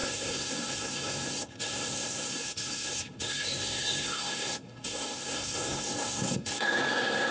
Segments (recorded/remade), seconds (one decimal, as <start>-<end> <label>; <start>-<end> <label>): 0.0-7.3 remade